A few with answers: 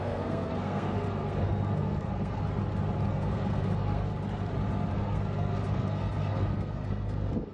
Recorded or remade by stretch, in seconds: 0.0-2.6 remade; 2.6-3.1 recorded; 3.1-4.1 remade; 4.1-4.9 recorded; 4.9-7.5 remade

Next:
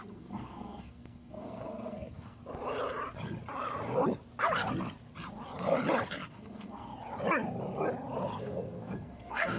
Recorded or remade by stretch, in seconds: 0.0-2.4 remade; 2.4-6.3 recorded; 6.3-6.9 remade; 6.9-8.4 recorded; 8.4-9.6 remade

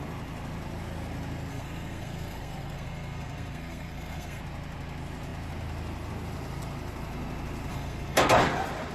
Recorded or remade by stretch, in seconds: 0.0-1.5 recorded; 1.5-4.4 remade; 4.4-7.7 recorded; 7.7-8.3 remade; 8.3-8.9 recorded

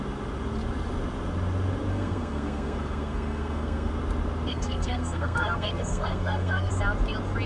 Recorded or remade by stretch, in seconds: 0.0-1.9 recorded; 1.9-3.9 remade; 3.9-4.5 recorded; 4.5-6.7 remade; 6.7-7.5 recorded

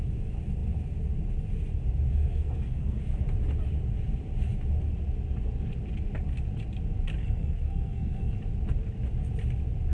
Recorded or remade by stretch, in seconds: 0.0-2.1 recorded; 2.1-3.0 remade; 3.0-7.2 recorded; 7.2-8.4 remade; 8.4-9.9 recorded